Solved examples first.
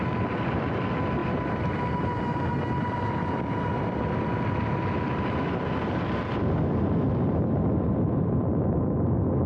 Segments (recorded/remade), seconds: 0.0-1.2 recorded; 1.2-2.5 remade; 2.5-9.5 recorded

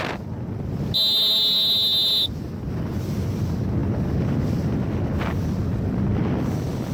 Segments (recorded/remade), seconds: 0.0-6.9 recorded

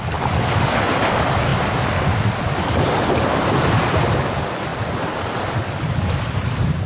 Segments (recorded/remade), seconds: 0.0-6.9 recorded